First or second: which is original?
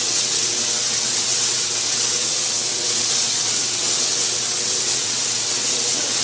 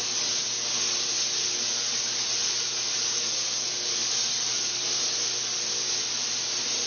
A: second